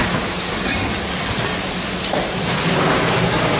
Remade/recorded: recorded